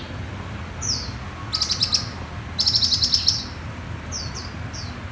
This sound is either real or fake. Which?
real